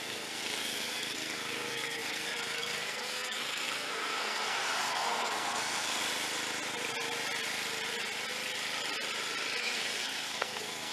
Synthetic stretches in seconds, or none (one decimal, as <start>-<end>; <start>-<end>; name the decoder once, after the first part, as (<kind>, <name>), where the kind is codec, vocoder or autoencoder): 0.0-6.0 (codec, SNAC); 9.6-10.9